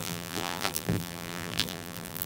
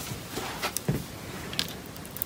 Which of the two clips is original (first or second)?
second